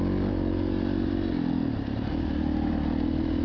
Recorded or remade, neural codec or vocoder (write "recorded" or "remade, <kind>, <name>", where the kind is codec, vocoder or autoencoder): recorded